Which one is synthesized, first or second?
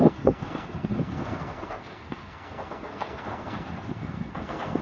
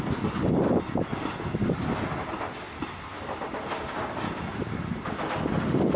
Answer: first